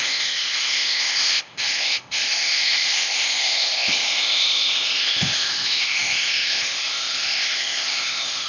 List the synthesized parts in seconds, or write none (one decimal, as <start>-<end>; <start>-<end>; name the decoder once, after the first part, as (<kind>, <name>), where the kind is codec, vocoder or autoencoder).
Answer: 0.0-8.5 (codec, ZipCodec)